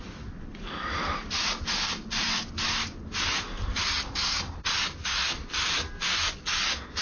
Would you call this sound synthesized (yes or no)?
no